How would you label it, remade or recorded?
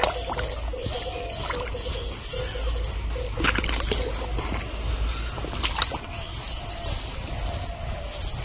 recorded